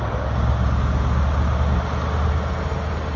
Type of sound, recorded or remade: recorded